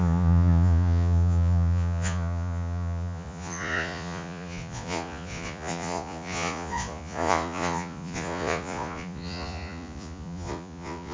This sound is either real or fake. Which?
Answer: fake